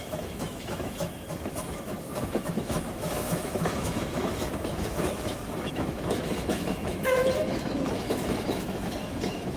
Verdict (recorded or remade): remade